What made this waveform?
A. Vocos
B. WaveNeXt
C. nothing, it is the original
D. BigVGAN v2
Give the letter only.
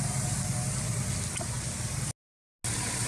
C